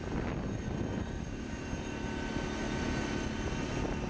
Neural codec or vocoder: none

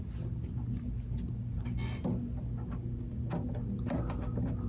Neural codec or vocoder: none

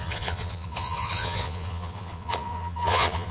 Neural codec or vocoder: vocoder, Vocos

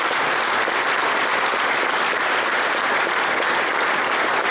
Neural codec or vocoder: none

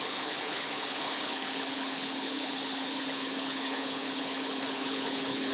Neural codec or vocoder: codec, HILCodec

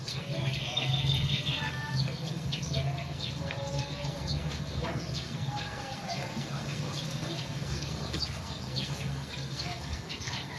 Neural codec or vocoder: codec, SNAC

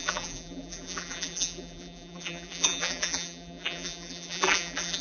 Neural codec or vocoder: vocoder, BigVGAN v2